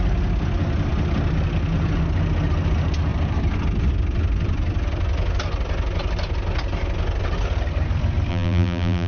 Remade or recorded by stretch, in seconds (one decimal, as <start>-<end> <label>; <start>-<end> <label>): 0.0-8.3 recorded; 8.3-9.1 remade